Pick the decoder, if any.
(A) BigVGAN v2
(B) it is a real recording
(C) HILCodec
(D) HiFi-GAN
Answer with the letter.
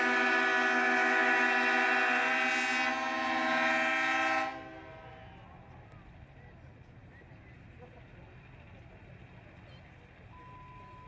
B